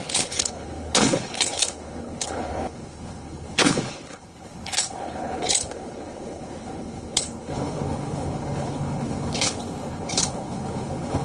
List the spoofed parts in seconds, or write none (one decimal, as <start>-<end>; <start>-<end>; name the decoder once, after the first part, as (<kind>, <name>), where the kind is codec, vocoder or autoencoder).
0.0-11.2 (codec, HILCodec)

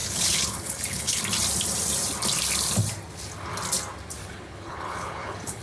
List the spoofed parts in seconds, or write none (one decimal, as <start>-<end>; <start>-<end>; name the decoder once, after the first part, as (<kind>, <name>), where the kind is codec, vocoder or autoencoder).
0.0-1.2 (codec, HILCodec); 4.2-5.6

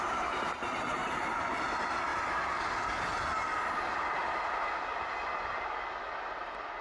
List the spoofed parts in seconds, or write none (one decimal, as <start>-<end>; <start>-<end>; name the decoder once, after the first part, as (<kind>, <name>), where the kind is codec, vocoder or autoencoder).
none

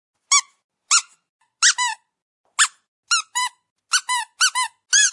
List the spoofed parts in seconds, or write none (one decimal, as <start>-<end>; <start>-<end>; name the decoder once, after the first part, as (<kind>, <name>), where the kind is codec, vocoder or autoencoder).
none